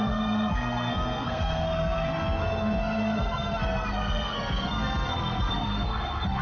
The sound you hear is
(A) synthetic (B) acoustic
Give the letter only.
A